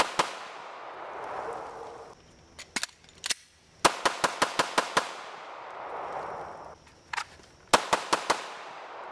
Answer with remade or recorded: recorded